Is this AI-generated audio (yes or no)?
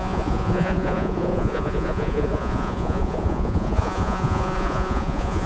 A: yes